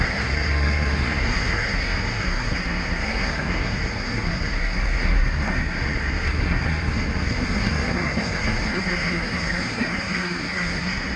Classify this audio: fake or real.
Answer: fake